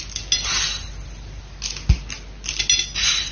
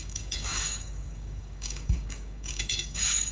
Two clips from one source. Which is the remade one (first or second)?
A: second